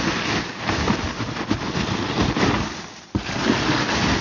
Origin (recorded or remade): recorded